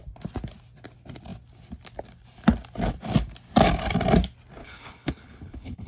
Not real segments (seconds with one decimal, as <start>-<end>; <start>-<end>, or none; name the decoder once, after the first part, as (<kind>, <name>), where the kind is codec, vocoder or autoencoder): 4.6-5.9 (codec, HILCodec)